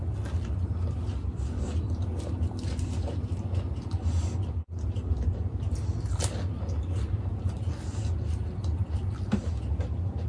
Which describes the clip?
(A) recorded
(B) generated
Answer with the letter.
A